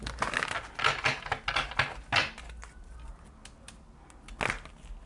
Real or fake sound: real